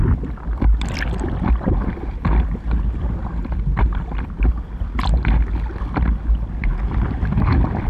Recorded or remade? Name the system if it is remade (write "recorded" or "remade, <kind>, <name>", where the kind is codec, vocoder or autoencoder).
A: recorded